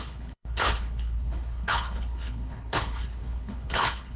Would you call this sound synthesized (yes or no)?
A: yes